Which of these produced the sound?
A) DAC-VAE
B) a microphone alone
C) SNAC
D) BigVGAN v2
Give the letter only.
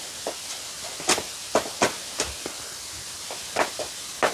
B